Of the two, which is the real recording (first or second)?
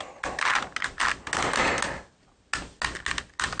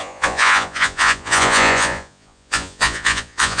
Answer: first